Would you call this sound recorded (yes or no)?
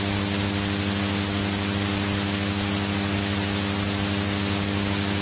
yes